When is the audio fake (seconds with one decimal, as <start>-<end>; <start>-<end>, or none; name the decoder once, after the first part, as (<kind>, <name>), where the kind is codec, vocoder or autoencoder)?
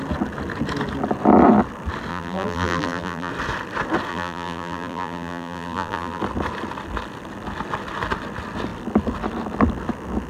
2.1-3.3 (vocoder, BigVGAN v2); 4.1-6.2